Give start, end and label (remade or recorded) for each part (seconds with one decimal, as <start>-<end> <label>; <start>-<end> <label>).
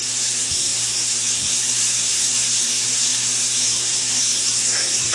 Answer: 0.0-5.1 remade